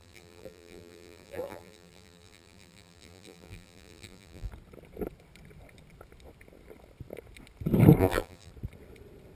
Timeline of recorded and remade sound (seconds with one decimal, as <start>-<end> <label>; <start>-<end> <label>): 0.0-4.5 remade; 4.5-8.0 recorded; 8.0-8.5 remade; 8.5-9.3 recorded